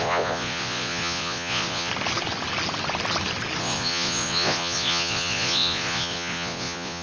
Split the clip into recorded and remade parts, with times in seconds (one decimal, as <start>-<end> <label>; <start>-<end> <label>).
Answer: 0.0-1.9 remade; 1.9-3.6 recorded; 3.6-7.0 remade